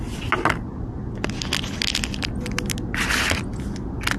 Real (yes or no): yes